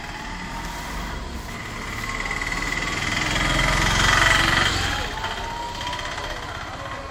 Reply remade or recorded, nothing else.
recorded